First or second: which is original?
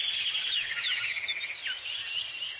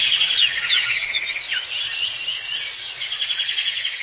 first